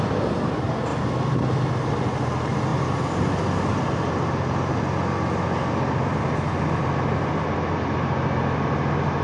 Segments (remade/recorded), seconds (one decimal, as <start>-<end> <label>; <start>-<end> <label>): 0.0-9.2 recorded